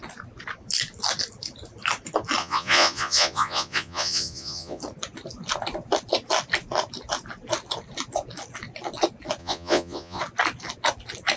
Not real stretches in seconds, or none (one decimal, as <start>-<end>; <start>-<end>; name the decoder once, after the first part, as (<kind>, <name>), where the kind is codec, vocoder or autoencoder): 2.4-4.8 (vocoder, Vocos); 9.4-10.2